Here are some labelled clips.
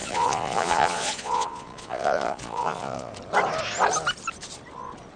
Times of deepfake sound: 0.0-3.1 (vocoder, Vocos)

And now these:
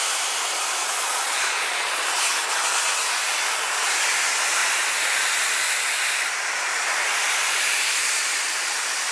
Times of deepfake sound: 0.8-2.0 (vocoder, Vocos)

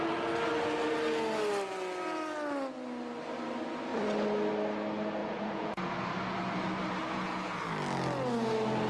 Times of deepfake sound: 5.2-5.9 (vocoder, Vocos); 7.0-7.6